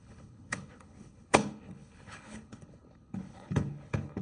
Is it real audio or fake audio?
fake